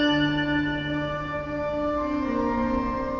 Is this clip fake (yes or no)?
no